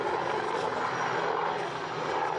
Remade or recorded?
recorded